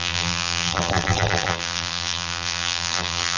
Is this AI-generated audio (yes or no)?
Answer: yes